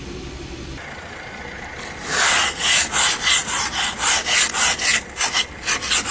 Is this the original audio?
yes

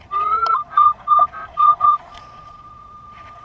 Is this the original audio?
no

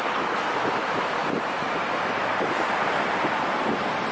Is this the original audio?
yes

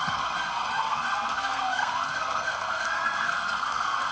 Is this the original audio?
no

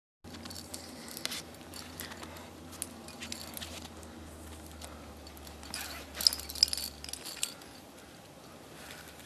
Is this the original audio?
yes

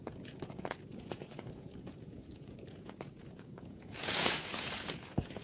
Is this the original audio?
no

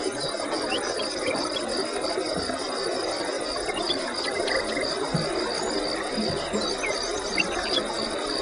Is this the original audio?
yes